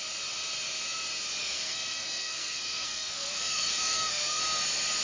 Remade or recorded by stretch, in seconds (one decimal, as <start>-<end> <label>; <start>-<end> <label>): 0.0-1.4 recorded; 1.4-4.4 remade; 4.4-5.0 recorded